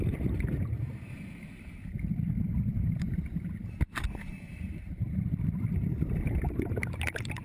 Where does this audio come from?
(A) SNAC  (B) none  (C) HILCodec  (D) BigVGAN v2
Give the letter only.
D